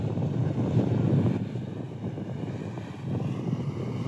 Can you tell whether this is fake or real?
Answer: real